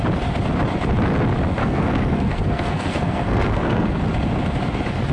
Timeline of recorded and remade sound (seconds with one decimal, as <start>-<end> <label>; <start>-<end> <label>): 0.0-1.6 recorded; 1.6-4.0 remade; 4.0-5.1 recorded